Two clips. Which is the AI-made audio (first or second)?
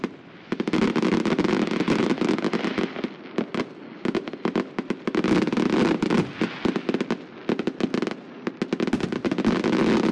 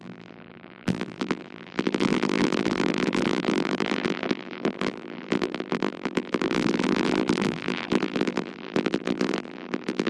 second